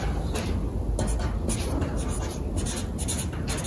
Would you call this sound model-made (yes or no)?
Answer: no